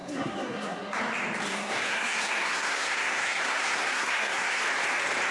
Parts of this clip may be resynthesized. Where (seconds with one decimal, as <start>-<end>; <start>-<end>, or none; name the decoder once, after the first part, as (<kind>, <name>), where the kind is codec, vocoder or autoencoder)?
0.0-1.0 (codec, SNAC); 1.5-4.6